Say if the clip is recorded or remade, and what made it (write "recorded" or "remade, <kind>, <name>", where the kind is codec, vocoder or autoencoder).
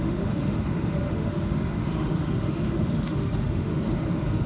remade, autoencoder, DAC-VAE